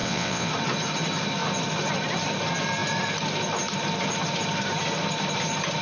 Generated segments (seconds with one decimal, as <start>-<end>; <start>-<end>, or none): 0.0-0.5